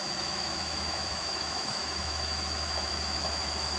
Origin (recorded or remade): remade